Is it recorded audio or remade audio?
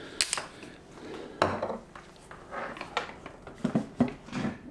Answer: recorded